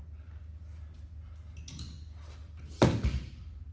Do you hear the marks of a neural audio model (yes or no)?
no